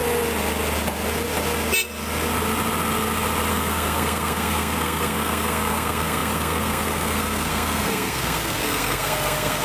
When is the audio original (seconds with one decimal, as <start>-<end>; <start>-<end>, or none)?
0.0-3.5